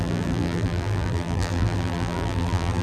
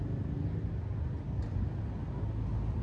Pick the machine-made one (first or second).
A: first